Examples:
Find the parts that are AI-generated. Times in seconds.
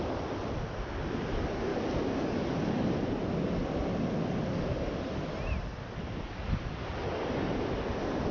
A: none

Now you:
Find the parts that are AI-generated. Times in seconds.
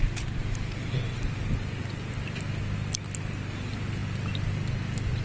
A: none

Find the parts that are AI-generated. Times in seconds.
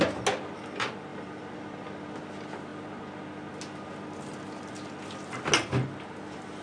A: 1.1-2.2 (vocoder, BigVGAN v2)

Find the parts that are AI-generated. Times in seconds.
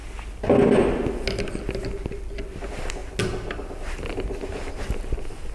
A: none